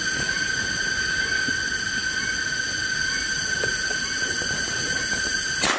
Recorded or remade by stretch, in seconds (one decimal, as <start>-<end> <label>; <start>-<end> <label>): 0.0-5.8 recorded